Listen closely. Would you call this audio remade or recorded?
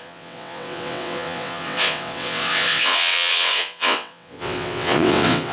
remade